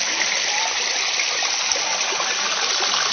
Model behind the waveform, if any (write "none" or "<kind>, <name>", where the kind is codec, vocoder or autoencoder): none